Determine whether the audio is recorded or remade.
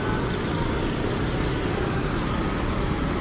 recorded